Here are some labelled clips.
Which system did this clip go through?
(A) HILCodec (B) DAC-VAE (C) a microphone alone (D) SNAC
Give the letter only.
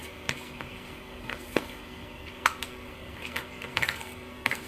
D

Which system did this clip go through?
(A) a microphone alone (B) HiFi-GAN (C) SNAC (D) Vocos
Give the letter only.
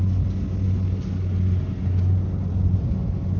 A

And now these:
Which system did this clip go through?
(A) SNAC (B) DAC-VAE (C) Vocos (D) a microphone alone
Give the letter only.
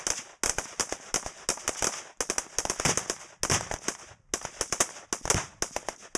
D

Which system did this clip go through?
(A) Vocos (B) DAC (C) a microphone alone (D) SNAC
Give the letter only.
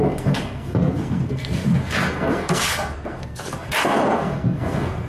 D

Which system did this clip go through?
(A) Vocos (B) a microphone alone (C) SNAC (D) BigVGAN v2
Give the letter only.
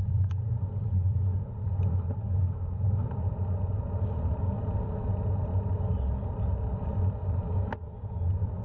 B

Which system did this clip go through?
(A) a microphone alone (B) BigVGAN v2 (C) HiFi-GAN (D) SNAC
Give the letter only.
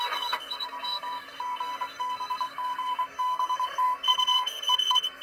D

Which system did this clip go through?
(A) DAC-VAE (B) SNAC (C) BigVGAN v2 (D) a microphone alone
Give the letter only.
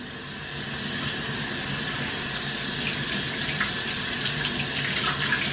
D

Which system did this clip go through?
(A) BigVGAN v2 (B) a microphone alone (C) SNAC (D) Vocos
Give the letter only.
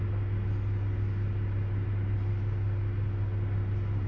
B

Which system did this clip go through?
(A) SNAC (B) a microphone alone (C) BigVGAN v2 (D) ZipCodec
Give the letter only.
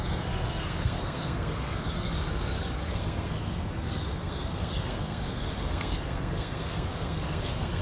A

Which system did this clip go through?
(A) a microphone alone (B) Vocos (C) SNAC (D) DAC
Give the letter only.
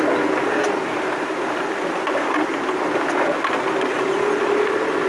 A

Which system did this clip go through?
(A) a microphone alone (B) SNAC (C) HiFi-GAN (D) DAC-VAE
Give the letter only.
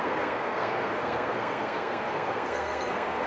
B